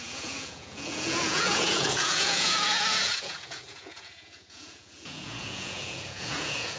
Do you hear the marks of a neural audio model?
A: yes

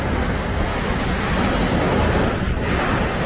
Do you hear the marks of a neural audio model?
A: no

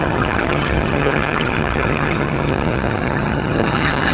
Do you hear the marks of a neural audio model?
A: yes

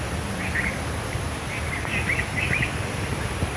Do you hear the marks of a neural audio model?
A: no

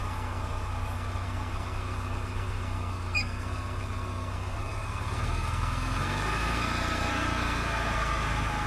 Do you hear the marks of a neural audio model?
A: yes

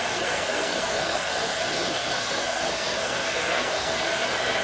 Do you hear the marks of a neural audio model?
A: yes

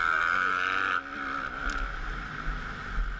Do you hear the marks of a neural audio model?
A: no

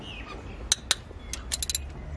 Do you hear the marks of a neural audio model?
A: no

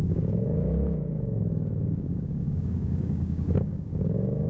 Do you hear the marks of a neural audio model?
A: yes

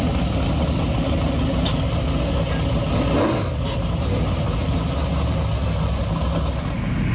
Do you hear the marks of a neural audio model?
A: no